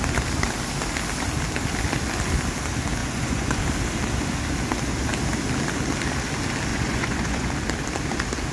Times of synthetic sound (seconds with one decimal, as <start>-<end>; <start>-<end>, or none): 3.0-3.6; 6.7-7.5